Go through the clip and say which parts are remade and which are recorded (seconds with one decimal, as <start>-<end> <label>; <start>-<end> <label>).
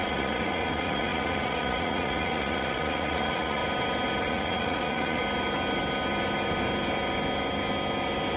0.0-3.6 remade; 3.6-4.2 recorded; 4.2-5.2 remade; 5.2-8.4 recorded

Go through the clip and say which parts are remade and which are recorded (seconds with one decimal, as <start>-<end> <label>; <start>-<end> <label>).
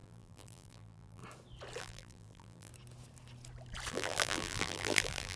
0.0-1.2 remade; 1.2-1.8 recorded; 1.8-2.7 remade; 2.7-3.9 recorded; 3.9-5.4 remade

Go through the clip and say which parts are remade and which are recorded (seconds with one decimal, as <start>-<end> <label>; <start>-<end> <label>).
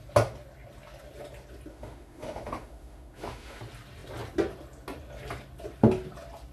0.0-1.7 recorded; 1.7-3.6 remade; 3.6-6.5 recorded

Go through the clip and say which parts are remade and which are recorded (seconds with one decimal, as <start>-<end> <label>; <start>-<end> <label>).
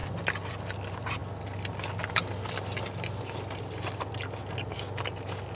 0.0-5.5 recorded